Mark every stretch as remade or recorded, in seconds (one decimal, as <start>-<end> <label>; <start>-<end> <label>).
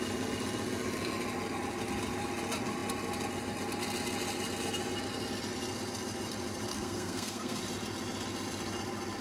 0.0-6.7 recorded; 6.7-7.6 remade; 7.6-9.2 recorded